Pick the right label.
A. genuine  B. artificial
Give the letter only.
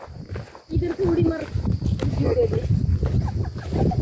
A